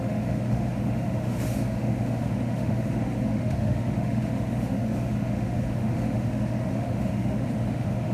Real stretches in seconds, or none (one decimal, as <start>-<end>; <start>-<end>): none